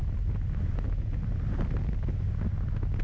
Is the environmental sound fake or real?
real